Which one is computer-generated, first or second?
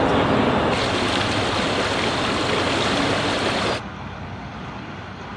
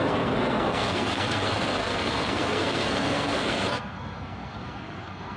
second